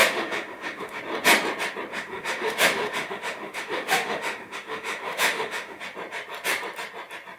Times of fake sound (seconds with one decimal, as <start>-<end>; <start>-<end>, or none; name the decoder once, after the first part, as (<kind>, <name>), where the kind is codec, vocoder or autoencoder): 0.0-1.0 (autoencoder, DAC-VAE); 1.9-5.8